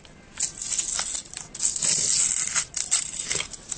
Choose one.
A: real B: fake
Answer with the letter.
A